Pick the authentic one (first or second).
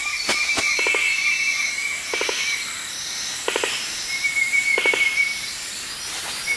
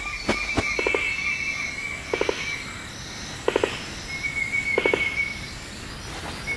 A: second